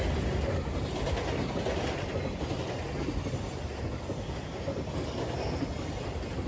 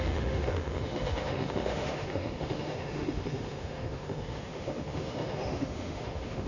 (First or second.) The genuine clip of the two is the first